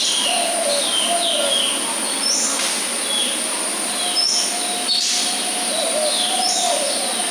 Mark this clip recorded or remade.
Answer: recorded